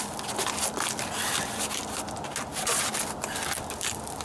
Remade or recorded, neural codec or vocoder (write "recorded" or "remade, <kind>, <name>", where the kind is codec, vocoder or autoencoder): recorded